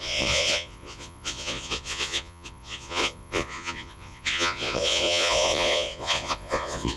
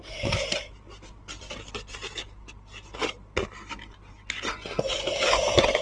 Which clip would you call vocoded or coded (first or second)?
first